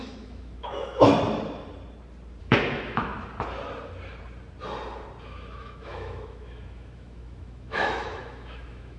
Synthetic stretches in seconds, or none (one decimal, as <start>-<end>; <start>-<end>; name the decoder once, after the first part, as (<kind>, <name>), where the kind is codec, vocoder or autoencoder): 0.0-1.1 (autoencoder, DAC-VAE); 2.4-3.1; 5.2-9.0